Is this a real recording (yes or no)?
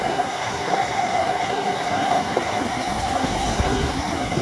no